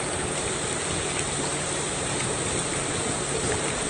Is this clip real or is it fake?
fake